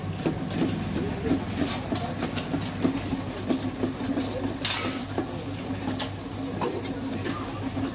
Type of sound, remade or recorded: recorded